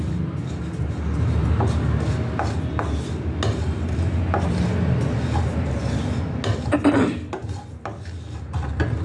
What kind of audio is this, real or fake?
real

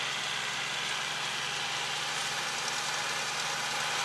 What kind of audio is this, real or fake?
real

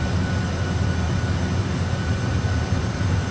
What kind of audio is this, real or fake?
real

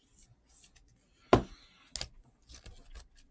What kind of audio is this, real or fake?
real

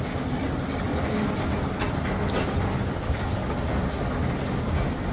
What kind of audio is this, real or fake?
real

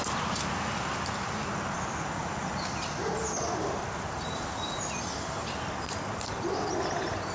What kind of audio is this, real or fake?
real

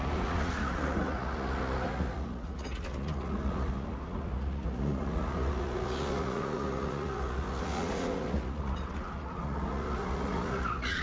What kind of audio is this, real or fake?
fake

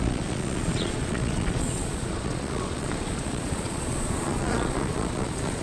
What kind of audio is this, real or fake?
fake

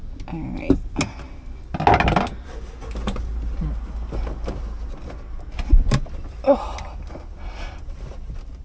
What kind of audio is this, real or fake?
real